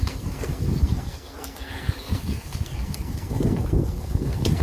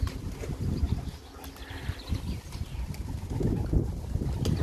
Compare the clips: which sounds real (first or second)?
second